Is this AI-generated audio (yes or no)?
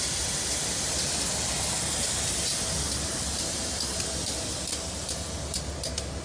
no